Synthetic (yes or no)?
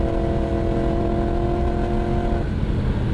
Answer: no